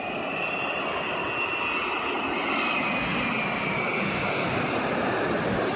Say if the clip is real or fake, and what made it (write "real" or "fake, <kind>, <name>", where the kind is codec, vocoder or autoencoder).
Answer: real